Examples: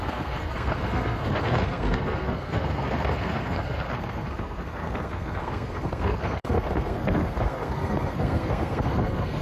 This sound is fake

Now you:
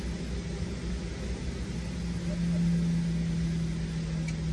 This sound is real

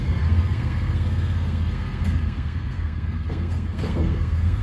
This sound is fake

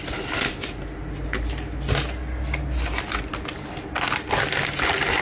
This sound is real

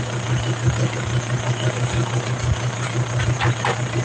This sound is real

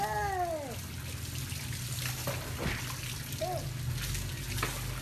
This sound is real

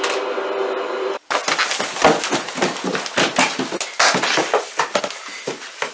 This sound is real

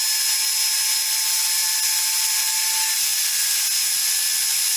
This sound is real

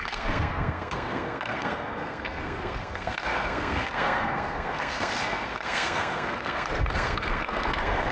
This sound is fake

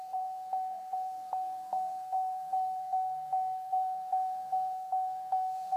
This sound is fake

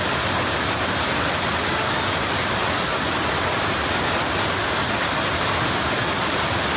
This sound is real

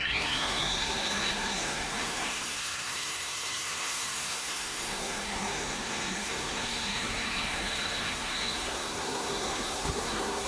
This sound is fake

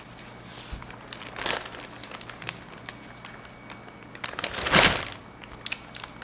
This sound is real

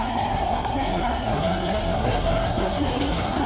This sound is fake